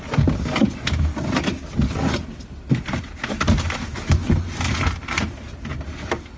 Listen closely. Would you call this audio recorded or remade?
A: recorded